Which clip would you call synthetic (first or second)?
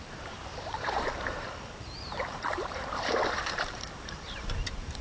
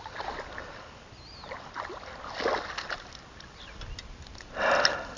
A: first